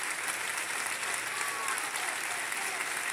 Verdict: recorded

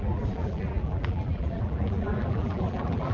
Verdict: remade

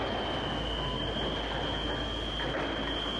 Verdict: recorded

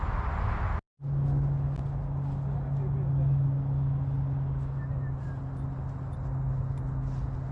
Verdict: recorded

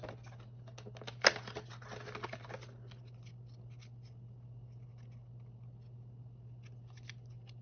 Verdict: recorded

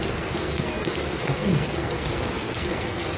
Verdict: remade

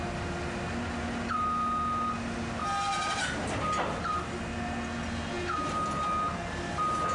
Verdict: recorded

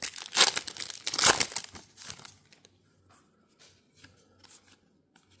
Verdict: recorded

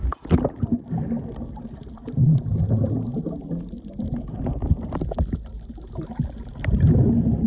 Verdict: recorded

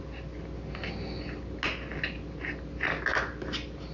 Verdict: recorded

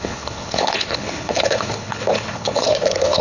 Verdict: remade